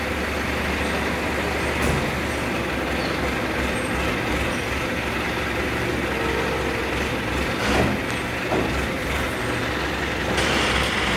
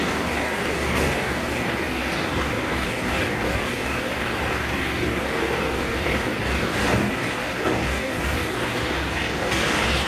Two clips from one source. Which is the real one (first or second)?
first